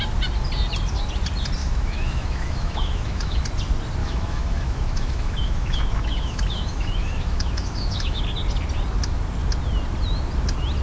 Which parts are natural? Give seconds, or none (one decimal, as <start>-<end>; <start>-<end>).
0.0-1.6; 3.4-4.0; 8.2-10.8